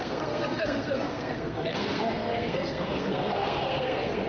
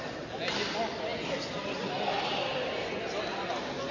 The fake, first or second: first